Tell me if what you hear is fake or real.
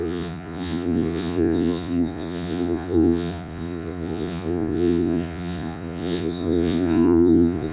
fake